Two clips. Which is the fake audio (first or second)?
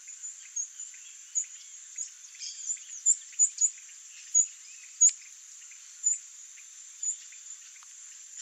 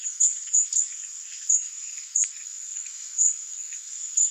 second